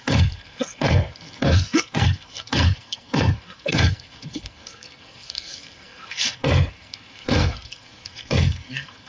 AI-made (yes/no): yes